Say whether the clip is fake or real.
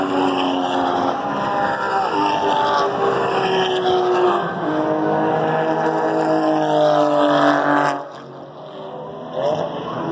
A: real